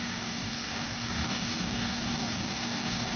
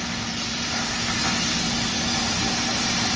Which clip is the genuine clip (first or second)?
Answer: second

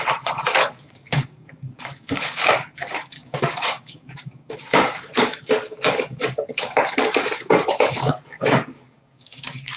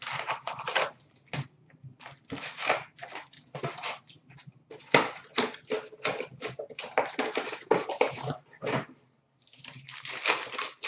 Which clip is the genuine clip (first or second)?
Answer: second